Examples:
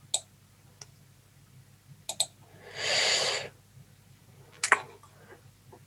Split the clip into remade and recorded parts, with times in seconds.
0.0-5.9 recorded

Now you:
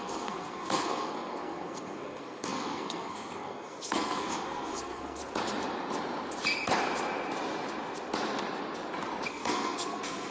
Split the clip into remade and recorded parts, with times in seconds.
0.0-5.2 remade; 5.2-9.3 recorded; 9.3-10.3 remade

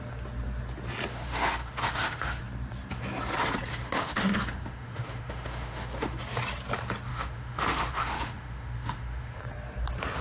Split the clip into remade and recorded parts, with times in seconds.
0.0-1.1 recorded; 1.1-2.4 remade; 2.4-3.7 recorded; 3.7-6.2 remade; 6.2-7.1 recorded; 7.1-9.4 remade; 9.4-10.2 recorded

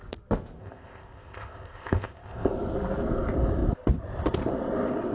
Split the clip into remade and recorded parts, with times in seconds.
0.0-0.6 recorded; 0.6-2.5 remade; 2.5-5.1 recorded

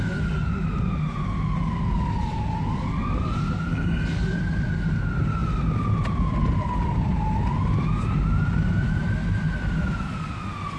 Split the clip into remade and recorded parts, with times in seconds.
0.0-10.8 recorded